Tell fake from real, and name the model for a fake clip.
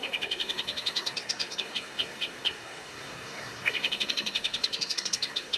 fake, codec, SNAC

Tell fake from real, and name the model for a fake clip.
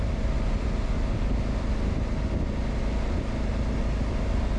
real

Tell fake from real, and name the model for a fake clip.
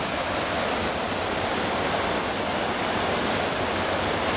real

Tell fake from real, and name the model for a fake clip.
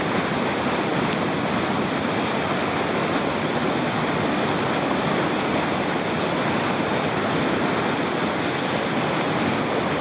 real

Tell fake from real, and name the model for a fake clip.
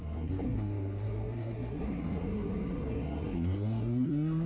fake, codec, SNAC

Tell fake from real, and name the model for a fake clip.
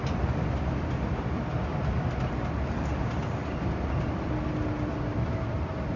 real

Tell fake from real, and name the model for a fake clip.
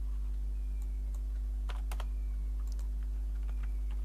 real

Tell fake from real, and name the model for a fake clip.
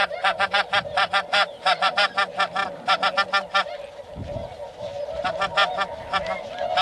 real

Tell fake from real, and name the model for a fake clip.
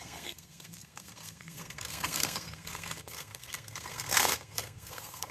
fake, codec, SNAC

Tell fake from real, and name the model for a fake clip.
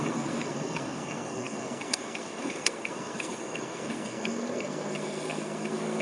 fake, codec, SNAC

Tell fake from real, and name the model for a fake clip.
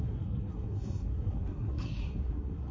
fake, codec, SNAC